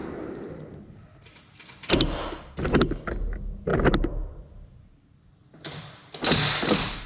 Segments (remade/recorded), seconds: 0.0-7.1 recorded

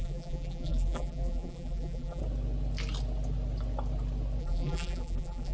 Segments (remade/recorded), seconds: 0.0-2.2 remade; 2.2-4.4 recorded; 4.4-5.5 remade